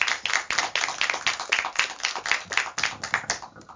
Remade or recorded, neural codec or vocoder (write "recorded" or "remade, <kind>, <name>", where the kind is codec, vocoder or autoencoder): recorded